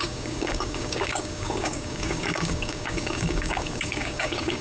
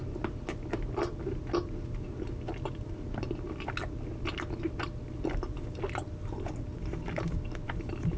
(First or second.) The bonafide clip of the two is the second